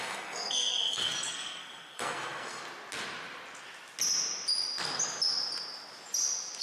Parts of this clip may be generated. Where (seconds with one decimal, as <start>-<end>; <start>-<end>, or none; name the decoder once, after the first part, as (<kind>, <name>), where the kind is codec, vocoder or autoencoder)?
0.0-2.6 (codec, SNAC)